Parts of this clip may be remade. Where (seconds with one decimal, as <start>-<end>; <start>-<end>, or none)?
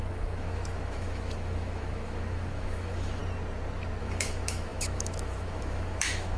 0.0-3.2; 4.0-6.4